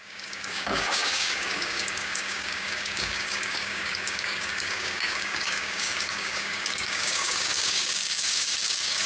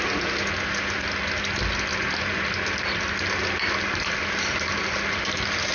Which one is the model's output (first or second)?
first